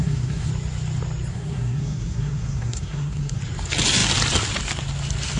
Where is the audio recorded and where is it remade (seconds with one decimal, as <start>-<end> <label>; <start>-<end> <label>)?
0.0-0.5 remade; 0.5-1.3 recorded; 1.3-3.4 remade; 3.4-5.4 recorded